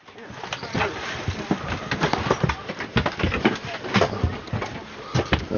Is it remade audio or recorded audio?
recorded